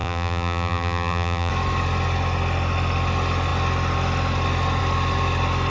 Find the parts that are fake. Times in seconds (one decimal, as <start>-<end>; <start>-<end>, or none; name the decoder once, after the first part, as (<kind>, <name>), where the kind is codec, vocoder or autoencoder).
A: 0.0-1.5 (vocoder, BigVGAN v2)